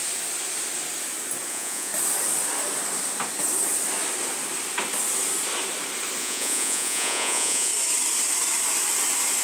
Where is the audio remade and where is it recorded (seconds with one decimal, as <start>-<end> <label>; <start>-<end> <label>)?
0.0-1.5 recorded; 1.5-1.9 remade; 1.9-6.2 recorded; 6.2-7.7 remade; 7.7-9.4 recorded